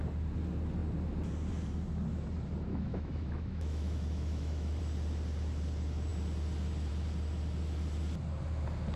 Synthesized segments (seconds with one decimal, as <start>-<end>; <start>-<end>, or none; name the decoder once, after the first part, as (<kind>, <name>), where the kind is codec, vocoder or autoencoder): 2.7-4.8 (autoencoder, DAC-VAE)